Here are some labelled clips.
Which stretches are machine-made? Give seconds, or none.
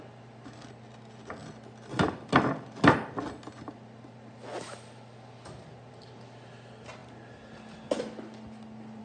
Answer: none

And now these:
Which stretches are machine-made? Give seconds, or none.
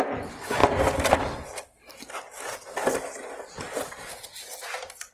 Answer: none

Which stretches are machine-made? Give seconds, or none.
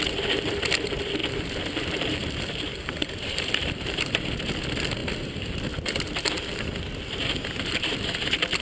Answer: 1.2-4.3 (vocoder, BigVGAN v2)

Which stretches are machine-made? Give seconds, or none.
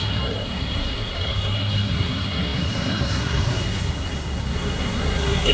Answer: 0.0-5.5 (codec, SNAC)